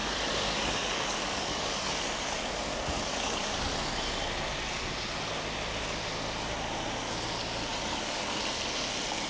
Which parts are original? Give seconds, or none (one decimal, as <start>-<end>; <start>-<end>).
3.6-7.7; 8.4-9.3